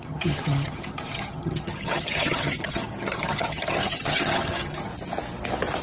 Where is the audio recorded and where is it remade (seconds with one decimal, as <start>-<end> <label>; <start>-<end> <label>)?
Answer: 0.0-4.9 remade; 4.9-5.8 recorded